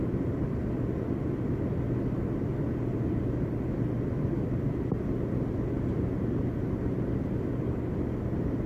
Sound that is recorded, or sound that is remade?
recorded